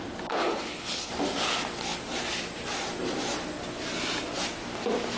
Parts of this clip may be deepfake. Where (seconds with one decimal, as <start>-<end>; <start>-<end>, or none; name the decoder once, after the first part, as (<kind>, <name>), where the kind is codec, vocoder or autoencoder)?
0.4-1.1 (codec, HILCodec)